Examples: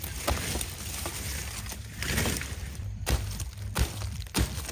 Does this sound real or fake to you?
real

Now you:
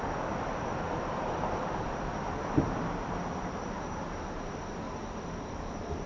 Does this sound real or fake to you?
fake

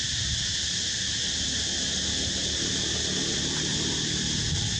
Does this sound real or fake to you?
real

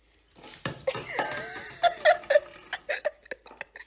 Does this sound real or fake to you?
real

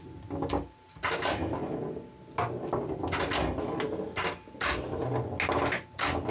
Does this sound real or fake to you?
real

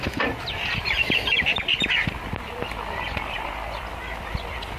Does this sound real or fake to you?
real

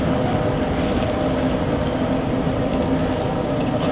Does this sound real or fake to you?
real